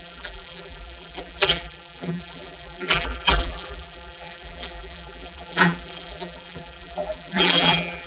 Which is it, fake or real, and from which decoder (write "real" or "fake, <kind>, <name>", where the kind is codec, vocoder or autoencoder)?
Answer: fake, vocoder, BigVGAN v2